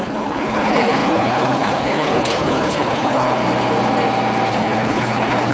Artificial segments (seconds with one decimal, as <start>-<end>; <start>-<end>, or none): 0.0-3.4; 4.5-5.5